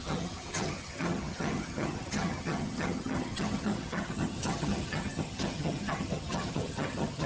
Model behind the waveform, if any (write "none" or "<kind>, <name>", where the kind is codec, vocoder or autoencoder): vocoder, HiFi-GAN